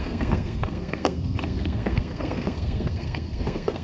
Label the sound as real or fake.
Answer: fake